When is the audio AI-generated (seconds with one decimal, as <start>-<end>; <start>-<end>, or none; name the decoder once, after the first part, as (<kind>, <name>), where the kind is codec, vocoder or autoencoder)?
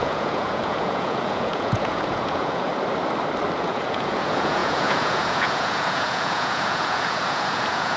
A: 0.0-2.7 (vocoder, Vocos); 3.6-8.0